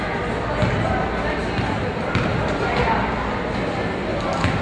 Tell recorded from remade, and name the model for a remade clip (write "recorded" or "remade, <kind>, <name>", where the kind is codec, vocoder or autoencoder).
recorded